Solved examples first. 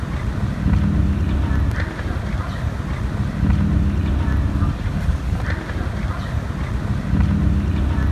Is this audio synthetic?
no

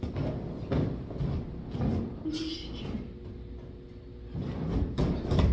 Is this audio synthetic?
no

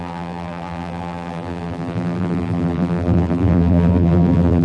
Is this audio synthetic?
yes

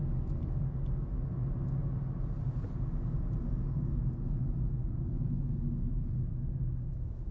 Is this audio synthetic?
no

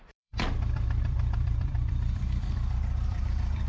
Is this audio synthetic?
yes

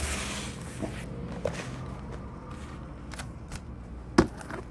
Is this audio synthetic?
no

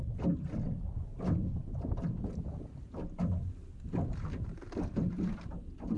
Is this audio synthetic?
no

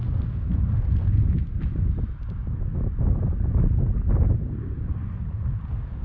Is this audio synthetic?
no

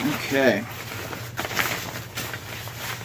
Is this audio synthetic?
no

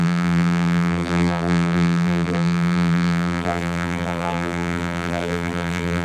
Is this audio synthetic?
yes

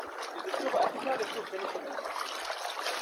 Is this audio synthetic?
no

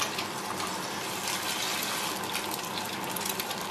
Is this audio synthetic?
no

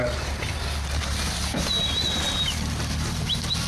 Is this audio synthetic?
no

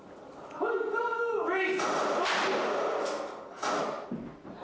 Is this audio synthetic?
no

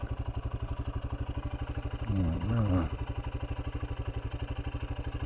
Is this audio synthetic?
no